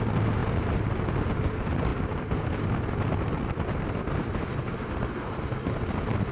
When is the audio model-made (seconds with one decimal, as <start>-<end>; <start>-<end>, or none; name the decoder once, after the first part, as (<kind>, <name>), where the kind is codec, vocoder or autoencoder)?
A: none